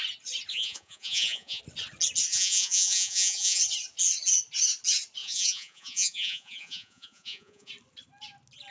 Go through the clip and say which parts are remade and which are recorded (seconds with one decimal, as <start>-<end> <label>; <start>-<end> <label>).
0.0-0.5 recorded; 0.5-1.6 remade; 1.6-2.3 recorded; 2.3-3.6 remade; 3.6-5.2 recorded; 5.2-7.7 remade; 7.7-8.7 recorded